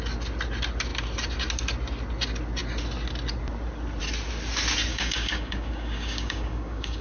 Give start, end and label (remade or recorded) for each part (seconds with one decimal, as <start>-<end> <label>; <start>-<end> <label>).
0.0-4.9 recorded; 4.9-7.0 remade